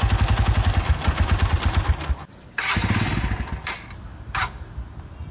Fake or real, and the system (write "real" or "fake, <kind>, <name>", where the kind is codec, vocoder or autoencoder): real